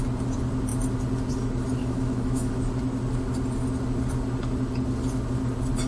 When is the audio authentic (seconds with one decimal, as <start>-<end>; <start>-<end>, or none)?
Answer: 0.0-1.8; 2.5-5.9